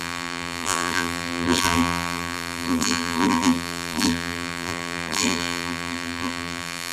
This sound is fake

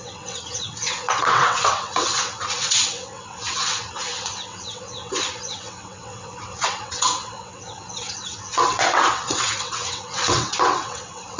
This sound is fake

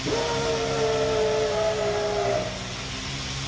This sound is real